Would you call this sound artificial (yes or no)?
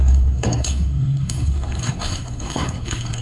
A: yes